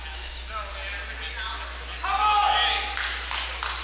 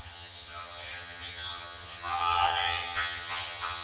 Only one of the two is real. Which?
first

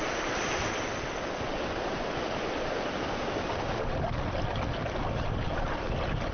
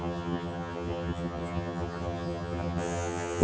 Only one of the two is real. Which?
first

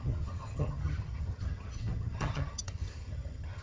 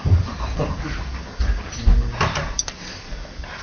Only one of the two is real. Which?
second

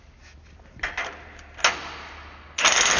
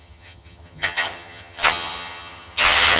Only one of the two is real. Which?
first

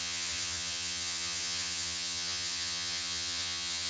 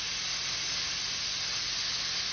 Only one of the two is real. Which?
second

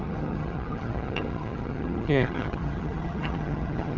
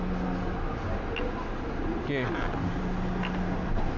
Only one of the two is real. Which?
second